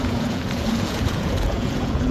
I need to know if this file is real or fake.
fake